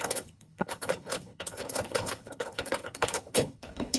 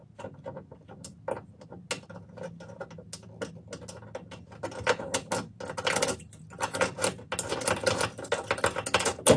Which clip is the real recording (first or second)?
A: second